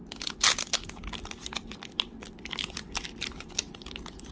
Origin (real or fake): real